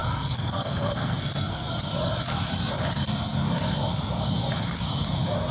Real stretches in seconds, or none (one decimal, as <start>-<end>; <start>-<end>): 1.7-5.5